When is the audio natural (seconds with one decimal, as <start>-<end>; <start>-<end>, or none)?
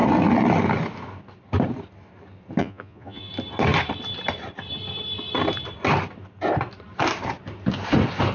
0.0-2.6; 3.3-8.3